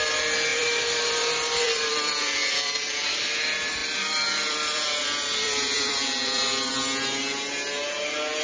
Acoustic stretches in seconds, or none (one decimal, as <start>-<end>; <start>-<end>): 0.0-0.5; 3.3-3.8; 6.7-8.4